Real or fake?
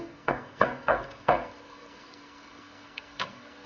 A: fake